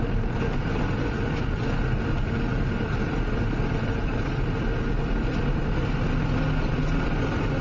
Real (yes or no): yes